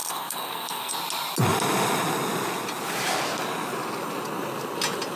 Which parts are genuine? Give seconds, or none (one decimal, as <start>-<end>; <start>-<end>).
0.9-5.2